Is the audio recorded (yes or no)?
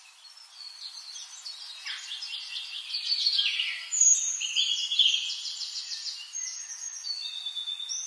yes